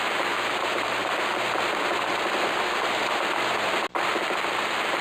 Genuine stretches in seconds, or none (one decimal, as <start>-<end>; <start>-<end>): 0.0-5.0